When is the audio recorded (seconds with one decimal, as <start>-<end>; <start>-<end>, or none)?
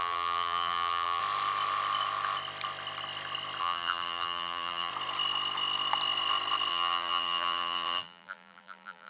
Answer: 1.2-3.6; 4.9-6.7